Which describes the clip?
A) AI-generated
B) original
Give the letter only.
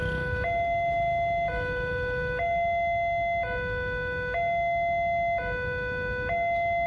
B